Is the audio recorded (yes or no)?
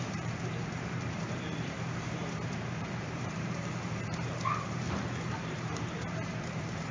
no